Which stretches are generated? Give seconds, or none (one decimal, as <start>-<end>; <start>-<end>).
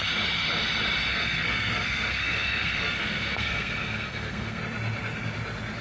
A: 1.1-4.6